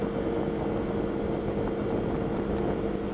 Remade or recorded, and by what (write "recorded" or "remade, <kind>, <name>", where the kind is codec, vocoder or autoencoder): recorded